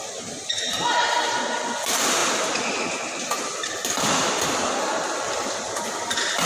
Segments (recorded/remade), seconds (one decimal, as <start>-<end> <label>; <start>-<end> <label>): 0.0-6.5 recorded